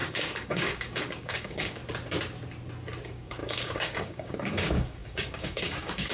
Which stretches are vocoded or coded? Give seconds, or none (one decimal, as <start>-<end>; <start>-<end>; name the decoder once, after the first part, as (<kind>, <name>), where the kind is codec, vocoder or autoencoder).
0.0-1.8 (codec, DAC); 3.0-6.1